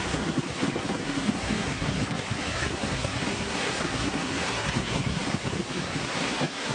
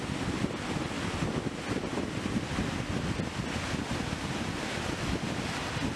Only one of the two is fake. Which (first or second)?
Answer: first